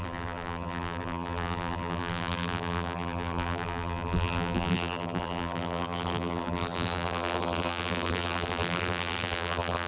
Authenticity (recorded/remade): remade